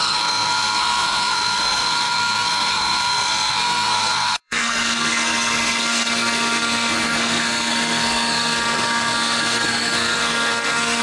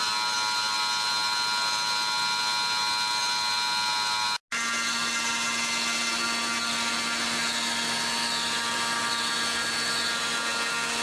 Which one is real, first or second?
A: second